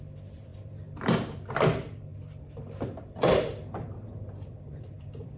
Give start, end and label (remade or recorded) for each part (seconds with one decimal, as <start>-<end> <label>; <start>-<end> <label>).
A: 0.0-5.4 remade